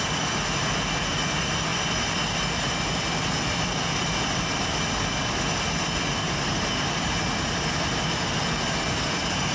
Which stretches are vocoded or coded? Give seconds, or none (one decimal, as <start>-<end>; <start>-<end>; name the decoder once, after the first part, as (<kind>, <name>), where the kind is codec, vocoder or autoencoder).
6.2-6.8 (vocoder, BigVGAN v2)